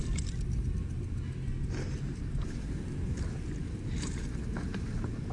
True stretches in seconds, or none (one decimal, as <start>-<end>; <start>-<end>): 0.0-5.3